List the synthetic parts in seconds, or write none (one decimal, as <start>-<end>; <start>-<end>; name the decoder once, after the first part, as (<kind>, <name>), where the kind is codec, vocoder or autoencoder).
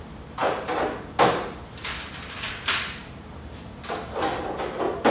none